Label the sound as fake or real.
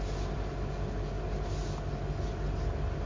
real